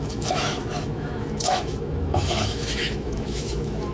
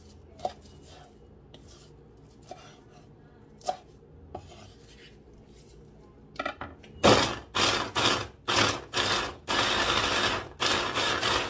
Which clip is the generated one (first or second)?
first